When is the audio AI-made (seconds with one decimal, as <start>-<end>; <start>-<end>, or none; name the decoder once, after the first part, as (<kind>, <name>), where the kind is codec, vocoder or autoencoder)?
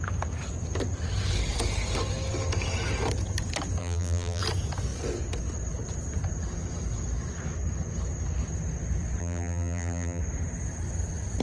3.8-4.4 (vocoder, BigVGAN v2); 9.2-10.2